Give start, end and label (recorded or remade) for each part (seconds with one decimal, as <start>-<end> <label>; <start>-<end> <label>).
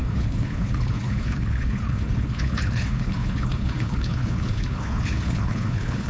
0.0-6.1 remade